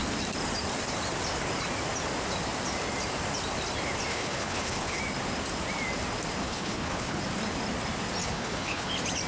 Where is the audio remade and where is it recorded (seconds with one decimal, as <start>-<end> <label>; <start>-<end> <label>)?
0.0-4.1 recorded; 4.1-5.0 remade; 5.0-6.4 recorded; 6.4-7.2 remade; 7.2-8.2 recorded; 8.2-8.9 remade; 8.9-9.3 recorded